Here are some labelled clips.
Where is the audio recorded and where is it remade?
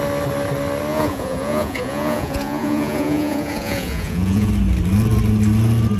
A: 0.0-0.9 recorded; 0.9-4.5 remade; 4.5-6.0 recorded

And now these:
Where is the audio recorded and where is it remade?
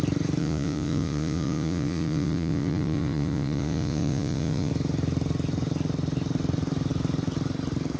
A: 0.0-0.4 recorded; 0.4-4.7 remade; 4.7-8.0 recorded